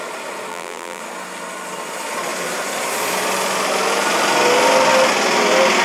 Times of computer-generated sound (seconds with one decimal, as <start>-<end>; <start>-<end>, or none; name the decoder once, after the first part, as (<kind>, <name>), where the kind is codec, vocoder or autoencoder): 0.5-1.0 (vocoder, BigVGAN v2)